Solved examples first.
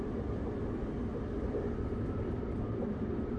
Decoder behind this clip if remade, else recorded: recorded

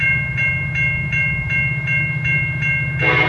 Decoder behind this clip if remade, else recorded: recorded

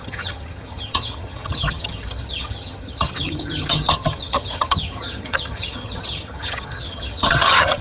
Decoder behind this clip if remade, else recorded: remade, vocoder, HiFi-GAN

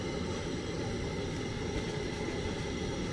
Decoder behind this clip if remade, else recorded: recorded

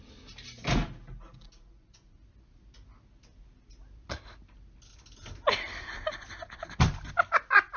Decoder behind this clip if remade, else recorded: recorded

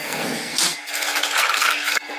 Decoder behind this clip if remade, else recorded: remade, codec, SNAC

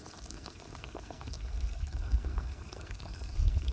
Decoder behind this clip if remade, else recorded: remade, codec, SNAC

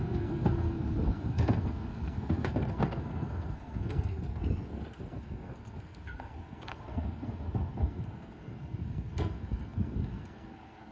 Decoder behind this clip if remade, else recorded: remade, codec, SNAC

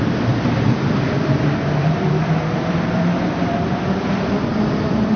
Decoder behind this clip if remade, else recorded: remade, vocoder, BigVGAN v2